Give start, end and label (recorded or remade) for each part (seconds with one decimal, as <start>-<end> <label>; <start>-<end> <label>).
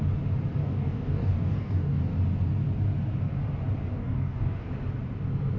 0.0-0.6 recorded; 0.6-2.0 remade; 2.0-3.9 recorded; 3.9-4.7 remade; 4.7-5.6 recorded